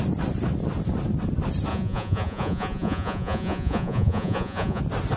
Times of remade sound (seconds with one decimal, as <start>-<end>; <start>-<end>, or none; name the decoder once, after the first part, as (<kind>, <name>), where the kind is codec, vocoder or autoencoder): 1.7-4.8 (vocoder, Vocos)